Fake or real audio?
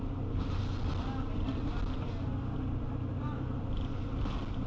real